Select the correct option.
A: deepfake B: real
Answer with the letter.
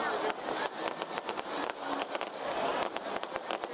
B